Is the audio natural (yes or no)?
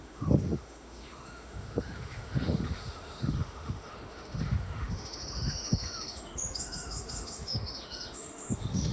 no